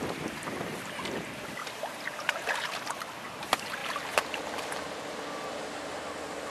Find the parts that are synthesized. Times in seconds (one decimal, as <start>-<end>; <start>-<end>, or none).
none